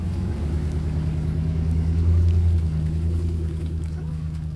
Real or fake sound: fake